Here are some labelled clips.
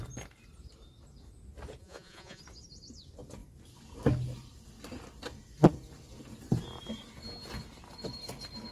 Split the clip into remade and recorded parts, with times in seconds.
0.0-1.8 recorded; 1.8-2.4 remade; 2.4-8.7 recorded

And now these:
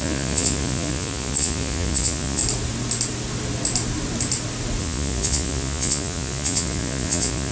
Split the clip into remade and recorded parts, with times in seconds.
0.0-2.4 remade; 2.4-4.8 recorded; 4.8-7.5 remade

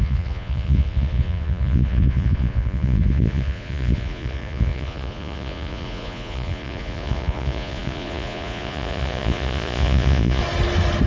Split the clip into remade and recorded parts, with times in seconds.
0.0-10.4 remade; 10.4-11.1 recorded

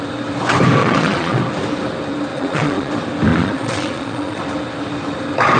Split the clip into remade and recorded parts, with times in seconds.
0.0-0.8 recorded; 0.8-1.4 remade; 1.4-2.3 recorded; 2.3-2.9 remade; 2.9-3.3 recorded; 3.3-4.4 remade; 4.4-5.6 recorded

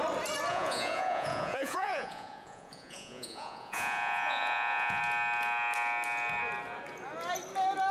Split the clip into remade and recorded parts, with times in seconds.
0.0-0.5 recorded; 0.5-5.0 remade; 5.0-7.9 recorded